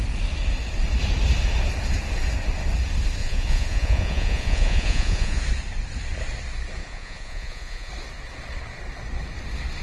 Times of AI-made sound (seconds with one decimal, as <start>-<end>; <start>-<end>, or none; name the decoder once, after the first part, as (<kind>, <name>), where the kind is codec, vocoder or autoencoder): 3.2-5.4 (vocoder, Vocos); 6.8-7.9

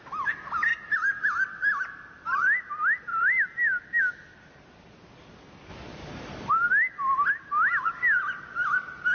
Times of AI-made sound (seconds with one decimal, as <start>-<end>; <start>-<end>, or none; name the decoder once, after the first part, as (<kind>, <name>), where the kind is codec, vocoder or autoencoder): 0.7-1.2 (vocoder, BigVGAN v2); 3.1-4.0; 5.7-6.5

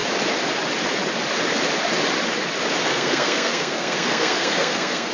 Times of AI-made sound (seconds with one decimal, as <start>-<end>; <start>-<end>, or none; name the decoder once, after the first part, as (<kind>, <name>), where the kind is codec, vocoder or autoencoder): 2.9-5.1 (codec, SNAC)

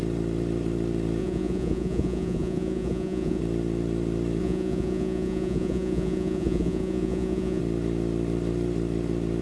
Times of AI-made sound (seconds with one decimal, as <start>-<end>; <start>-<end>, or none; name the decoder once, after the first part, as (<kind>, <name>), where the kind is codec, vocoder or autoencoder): 1.2-3.4 (vocoder, Vocos); 4.4-7.6